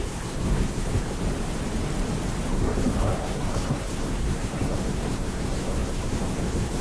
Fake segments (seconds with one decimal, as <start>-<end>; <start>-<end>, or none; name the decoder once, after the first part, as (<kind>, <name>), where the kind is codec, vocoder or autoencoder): 0.0-1.2 (codec, SNAC); 2.5-6.8